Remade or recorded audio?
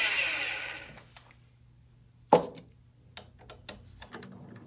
recorded